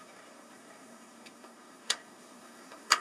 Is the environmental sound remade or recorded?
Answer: remade